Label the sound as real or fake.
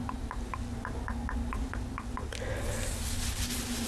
real